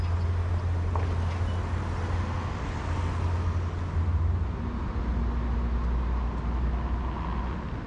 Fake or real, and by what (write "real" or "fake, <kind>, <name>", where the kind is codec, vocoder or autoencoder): real